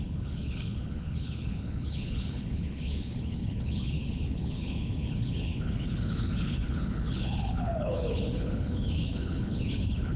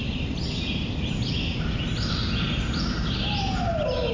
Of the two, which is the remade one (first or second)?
first